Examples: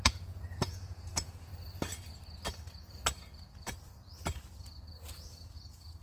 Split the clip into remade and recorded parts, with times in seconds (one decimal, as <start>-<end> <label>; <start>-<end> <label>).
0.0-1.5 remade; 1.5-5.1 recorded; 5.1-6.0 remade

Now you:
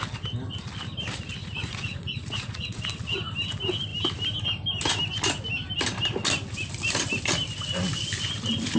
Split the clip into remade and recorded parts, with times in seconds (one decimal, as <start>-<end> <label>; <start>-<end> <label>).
0.0-1.4 recorded; 1.4-2.8 remade; 2.8-8.8 recorded

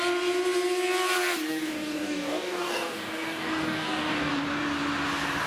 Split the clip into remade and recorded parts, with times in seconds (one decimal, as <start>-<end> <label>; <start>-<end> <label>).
0.0-1.5 recorded; 1.5-4.3 remade; 4.3-5.5 recorded

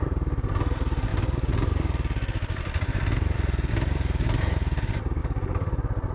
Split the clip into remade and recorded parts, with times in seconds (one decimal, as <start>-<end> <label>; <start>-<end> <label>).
0.0-1.1 remade; 1.1-3.7 recorded; 3.7-5.2 remade; 5.2-6.1 recorded

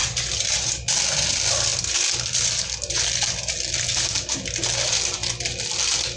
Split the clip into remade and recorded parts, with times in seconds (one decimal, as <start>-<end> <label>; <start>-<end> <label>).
0.0-0.7 remade; 0.7-6.2 recorded